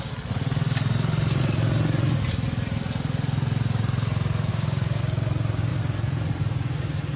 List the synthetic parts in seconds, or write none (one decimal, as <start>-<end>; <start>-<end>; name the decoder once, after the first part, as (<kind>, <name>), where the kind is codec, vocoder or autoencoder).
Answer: 4.5-5.0 (codec, DAC)